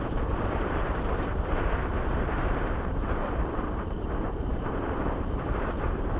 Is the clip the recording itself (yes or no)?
no